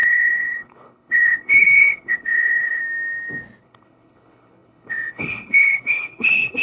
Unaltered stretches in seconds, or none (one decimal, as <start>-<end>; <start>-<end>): 2.8-3.6

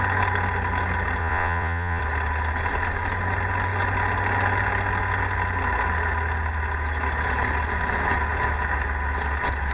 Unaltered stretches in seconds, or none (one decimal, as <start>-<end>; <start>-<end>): 0.0-1.2; 2.0-9.7

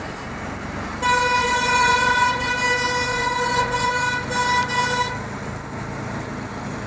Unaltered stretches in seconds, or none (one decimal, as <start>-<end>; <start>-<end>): 0.0-1.4; 2.5-3.1; 3.9-6.9

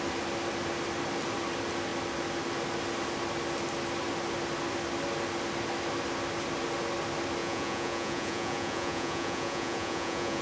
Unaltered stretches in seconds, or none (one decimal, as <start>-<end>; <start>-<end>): 0.0-7.4